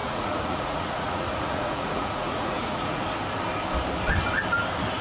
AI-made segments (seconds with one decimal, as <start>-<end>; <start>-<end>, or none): 0.0-3.0

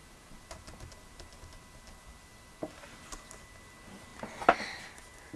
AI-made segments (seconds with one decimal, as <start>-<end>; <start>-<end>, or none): none

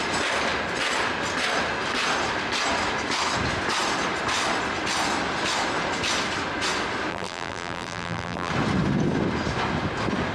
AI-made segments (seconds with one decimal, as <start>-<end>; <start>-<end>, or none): 7.1-8.5

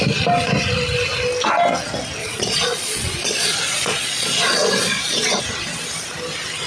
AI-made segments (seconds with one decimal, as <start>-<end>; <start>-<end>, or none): 2.2-5.4

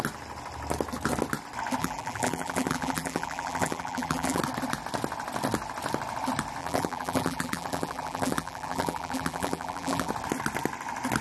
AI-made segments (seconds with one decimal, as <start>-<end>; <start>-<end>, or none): 1.8-4.4; 6.6-10.1

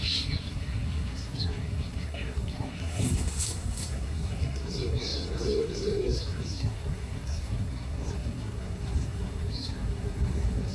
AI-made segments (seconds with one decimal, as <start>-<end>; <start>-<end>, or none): 0.0-10.7